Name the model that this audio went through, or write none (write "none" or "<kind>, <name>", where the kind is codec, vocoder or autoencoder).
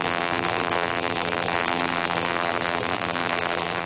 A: vocoder, BigVGAN v2